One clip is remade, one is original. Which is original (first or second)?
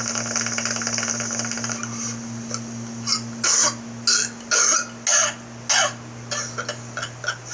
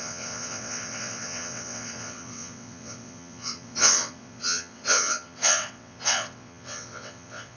first